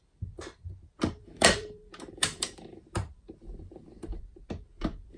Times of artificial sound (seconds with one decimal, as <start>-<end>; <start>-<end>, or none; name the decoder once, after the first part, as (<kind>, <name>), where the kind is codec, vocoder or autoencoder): 1.2-4.2 (vocoder, BigVGAN v2)